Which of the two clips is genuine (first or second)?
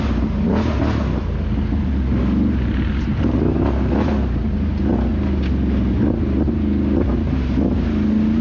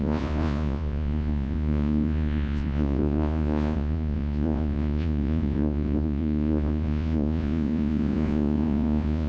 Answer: first